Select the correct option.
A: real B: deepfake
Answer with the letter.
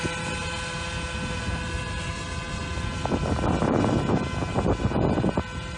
A